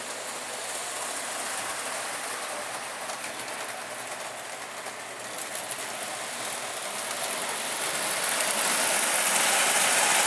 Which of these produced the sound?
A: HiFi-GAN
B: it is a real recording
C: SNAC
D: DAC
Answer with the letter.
B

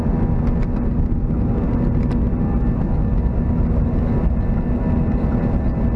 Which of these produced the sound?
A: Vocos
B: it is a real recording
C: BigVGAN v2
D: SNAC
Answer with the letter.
B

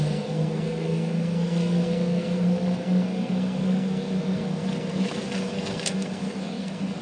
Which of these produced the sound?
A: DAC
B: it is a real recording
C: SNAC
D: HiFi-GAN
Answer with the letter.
C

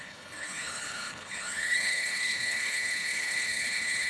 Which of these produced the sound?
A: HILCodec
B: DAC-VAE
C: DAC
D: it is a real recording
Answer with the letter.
A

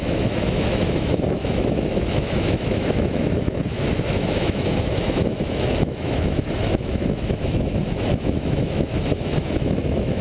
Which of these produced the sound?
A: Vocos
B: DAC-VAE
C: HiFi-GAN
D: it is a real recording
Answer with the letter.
B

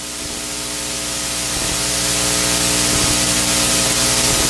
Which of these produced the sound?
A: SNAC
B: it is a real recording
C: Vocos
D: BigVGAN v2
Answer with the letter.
B